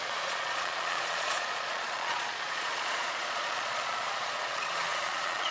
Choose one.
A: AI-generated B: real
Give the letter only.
A